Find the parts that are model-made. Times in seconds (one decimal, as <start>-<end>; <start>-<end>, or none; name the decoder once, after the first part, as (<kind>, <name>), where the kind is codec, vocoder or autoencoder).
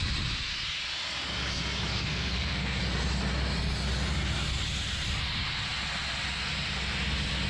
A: 2.1-2.8 (codec, SNAC)